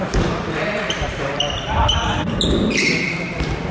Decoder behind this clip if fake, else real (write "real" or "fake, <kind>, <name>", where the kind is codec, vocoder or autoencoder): fake, vocoder, BigVGAN v2